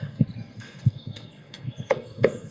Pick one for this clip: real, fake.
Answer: fake